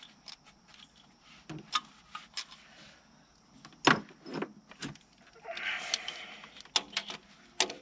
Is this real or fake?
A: real